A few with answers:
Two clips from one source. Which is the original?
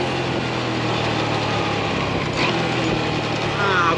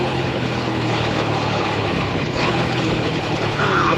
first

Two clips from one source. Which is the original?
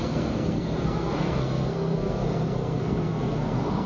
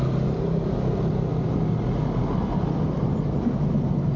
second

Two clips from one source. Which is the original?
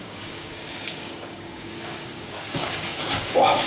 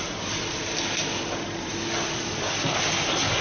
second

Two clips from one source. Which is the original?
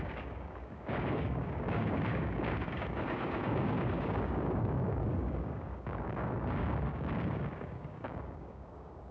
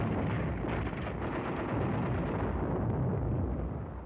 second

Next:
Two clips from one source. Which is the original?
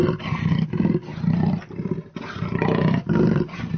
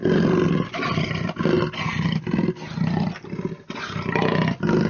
second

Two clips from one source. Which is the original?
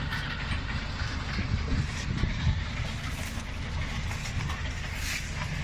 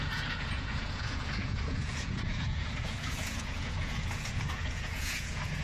first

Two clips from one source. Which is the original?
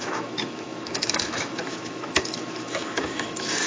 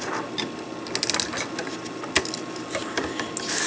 second